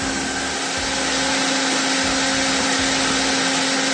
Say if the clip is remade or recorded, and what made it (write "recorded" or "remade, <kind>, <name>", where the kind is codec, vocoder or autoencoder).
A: recorded